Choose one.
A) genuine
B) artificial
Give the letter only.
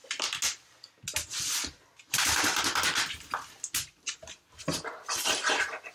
A